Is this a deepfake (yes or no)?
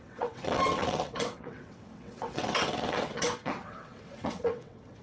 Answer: yes